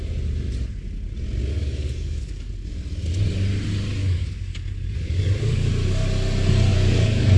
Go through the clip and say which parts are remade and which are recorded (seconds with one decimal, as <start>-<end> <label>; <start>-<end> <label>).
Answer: 0.0-1.5 recorded; 1.5-2.5 remade; 2.5-4.0 recorded; 4.0-5.7 remade; 5.7-6.7 recorded; 6.7-7.4 remade